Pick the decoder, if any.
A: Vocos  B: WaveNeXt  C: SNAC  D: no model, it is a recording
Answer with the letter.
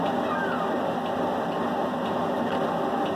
D